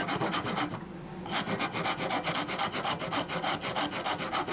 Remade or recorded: recorded